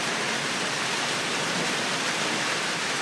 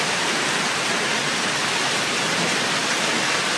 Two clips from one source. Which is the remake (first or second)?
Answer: first